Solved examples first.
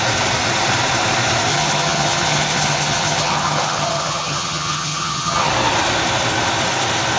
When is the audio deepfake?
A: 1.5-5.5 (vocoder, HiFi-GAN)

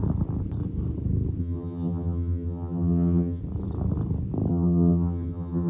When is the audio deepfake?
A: 1.4-3.4 (vocoder, HiFi-GAN); 4.5-5.7

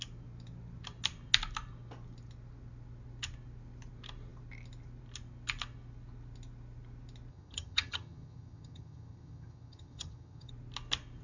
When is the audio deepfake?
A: 7.3-10.5 (vocoder, HiFi-GAN)

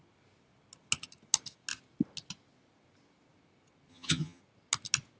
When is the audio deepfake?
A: 3.9-4.4 (vocoder, HiFi-GAN)

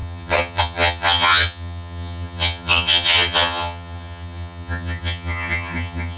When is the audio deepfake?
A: 0.0-6.2 (vocoder, HiFi-GAN)

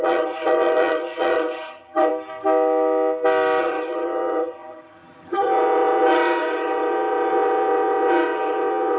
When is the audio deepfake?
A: 0.0-2.1 (vocoder, HiFi-GAN); 3.6-9.0

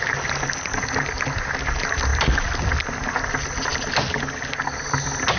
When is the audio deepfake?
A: none